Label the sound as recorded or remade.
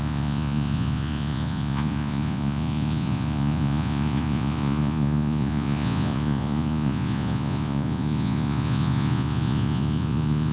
remade